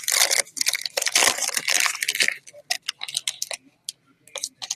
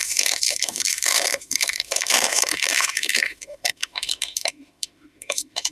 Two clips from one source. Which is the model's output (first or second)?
second